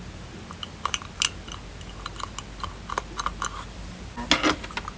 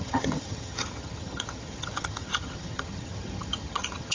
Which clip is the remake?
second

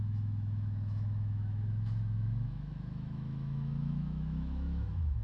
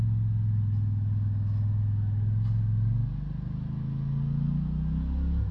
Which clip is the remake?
first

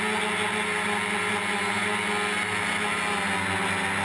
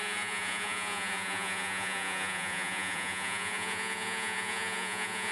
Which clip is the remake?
second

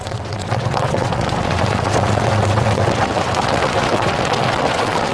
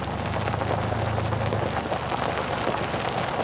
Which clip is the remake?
first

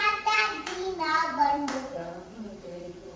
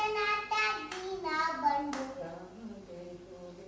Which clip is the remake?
first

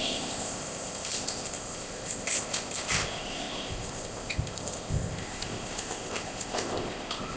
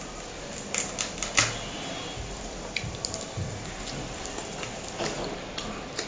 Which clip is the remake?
first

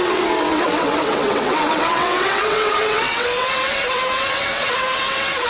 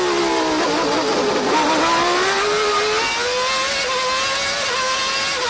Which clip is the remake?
first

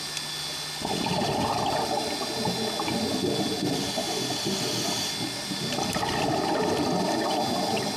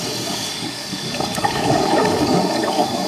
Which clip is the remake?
second